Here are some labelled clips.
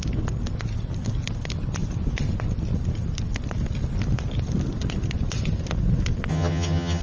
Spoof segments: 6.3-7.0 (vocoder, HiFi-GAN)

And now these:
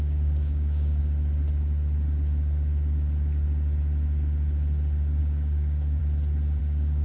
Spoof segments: 0.0-1.0 (codec, DAC); 5.2-6.0; 6.6-7.0

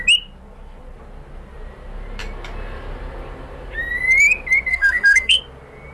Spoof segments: 4.7-5.4 (codec, SNAC)

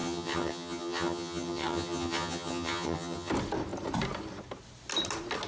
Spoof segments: 0.0-3.3 (vocoder, HiFi-GAN)

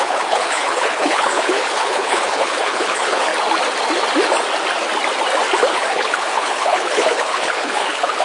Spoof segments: 0.0-3.3 (codec, HILCodec); 5.7-8.2

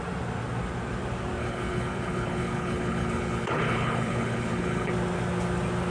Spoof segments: 1.4-4.9 (codec, HILCodec)